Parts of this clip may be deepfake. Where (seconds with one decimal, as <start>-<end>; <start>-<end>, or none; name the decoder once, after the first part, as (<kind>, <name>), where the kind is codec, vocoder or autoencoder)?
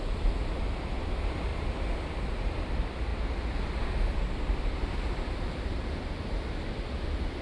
0.0-3.1 (vocoder, BigVGAN v2); 3.7-7.4